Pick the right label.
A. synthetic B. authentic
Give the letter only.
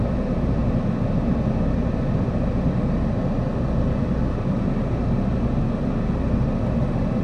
B